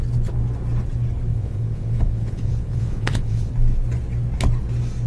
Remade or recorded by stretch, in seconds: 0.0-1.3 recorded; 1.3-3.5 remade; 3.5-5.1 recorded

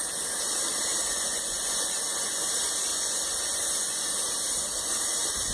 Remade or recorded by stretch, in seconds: 0.0-1.0 recorded; 1.0-2.5 remade; 2.5-2.9 recorded; 2.9-4.0 remade; 4.0-5.5 recorded

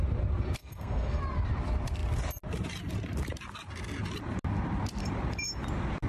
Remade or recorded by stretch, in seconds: 0.0-0.6 recorded; 0.6-1.2 remade; 1.2-6.1 recorded